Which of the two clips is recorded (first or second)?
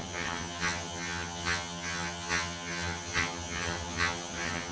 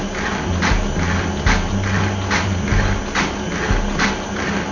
second